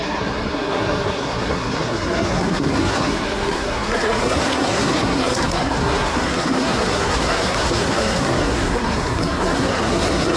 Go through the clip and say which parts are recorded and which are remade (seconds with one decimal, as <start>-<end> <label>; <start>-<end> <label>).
0.0-10.4 remade